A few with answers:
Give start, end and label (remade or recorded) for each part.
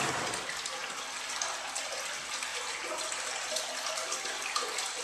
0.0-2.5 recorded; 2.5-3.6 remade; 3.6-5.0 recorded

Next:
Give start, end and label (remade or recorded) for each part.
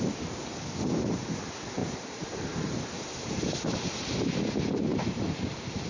0.0-1.8 recorded; 1.8-3.8 remade; 3.8-4.9 recorded; 4.9-5.9 remade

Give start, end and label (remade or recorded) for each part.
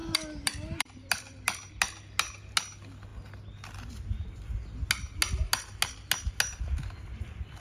0.0-1.7 remade; 1.7-7.6 recorded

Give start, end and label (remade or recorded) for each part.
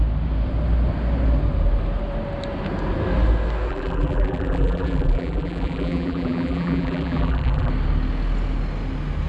0.0-3.7 recorded; 3.7-7.7 remade; 7.7-9.3 recorded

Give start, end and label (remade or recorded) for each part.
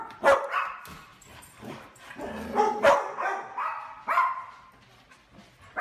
0.0-1.1 recorded; 1.1-2.7 remade; 2.7-5.8 recorded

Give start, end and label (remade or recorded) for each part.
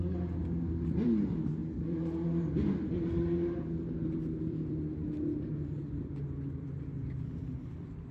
0.0-6.9 recorded; 6.9-8.1 remade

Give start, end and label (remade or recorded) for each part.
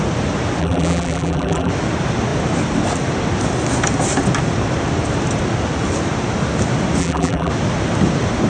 0.0-0.6 recorded; 0.6-1.7 remade; 1.7-7.0 recorded; 7.0-7.5 remade; 7.5-8.5 recorded